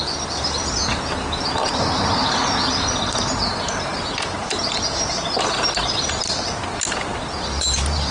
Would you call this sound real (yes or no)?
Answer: yes